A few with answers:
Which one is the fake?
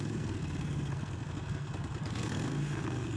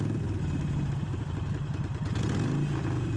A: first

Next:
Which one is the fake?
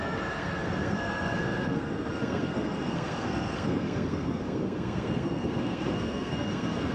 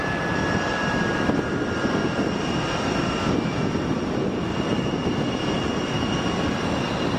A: first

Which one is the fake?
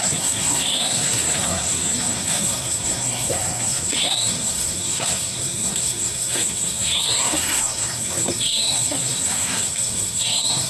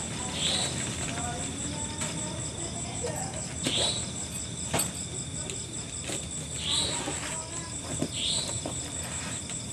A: first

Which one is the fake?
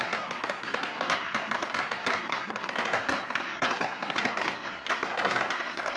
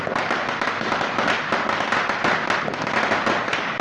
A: first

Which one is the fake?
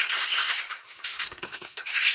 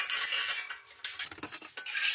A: first